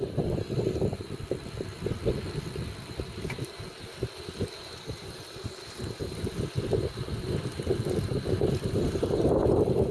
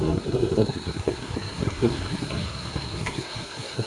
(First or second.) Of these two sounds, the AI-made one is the second